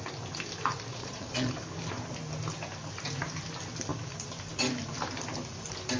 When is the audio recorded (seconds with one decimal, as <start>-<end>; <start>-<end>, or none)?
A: 0.0-0.9; 1.5-6.0